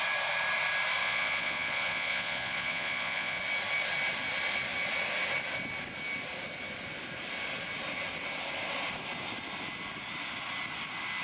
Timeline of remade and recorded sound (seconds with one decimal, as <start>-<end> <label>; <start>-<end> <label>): 0.0-1.0 recorded; 1.0-3.4 remade; 3.4-11.2 recorded

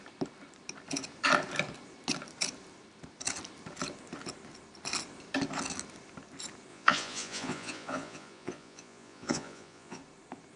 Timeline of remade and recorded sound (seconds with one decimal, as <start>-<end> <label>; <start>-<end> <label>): 0.0-6.7 recorded; 6.7-10.0 remade; 10.0-10.6 recorded

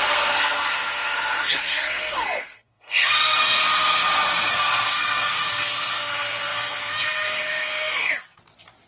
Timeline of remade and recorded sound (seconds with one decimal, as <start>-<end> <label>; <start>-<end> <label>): 0.0-3.6 remade; 3.6-4.5 recorded; 4.5-8.1 remade; 8.1-8.9 recorded

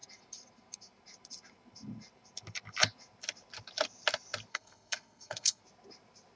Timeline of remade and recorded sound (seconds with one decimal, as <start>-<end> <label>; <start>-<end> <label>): 0.0-4.5 recorded; 4.5-5.6 remade; 5.6-6.4 recorded

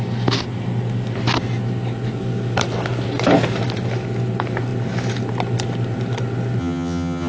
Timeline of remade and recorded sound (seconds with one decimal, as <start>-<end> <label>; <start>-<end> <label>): 0.0-6.6 recorded; 6.6-7.3 remade